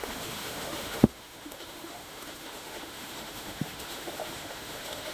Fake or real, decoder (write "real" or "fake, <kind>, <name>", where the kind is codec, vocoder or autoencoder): fake, autoencoder, DAC-VAE